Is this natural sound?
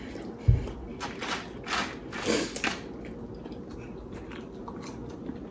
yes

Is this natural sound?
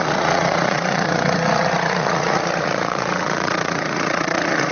no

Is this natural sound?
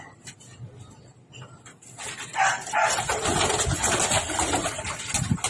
yes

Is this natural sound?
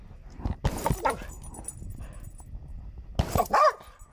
yes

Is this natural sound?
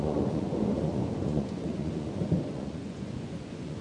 no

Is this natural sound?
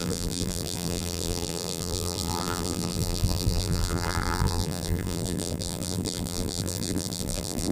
no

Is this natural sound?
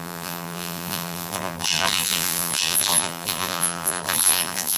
no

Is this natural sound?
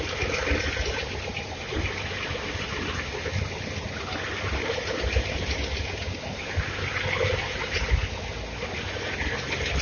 yes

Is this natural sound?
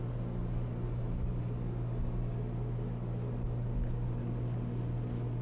yes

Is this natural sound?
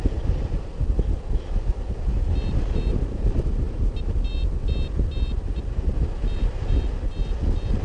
yes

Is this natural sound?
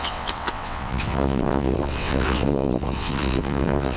no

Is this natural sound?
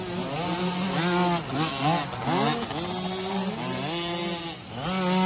yes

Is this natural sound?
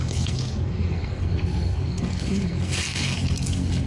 no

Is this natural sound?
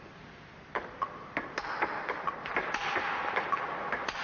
yes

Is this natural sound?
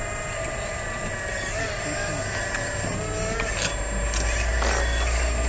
yes